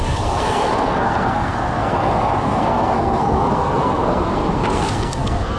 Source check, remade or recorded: remade